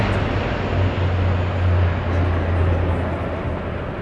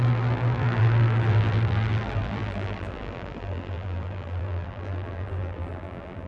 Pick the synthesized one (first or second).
second